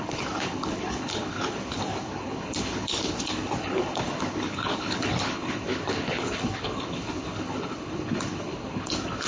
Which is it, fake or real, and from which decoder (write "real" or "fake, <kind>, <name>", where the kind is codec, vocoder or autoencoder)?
fake, codec, HILCodec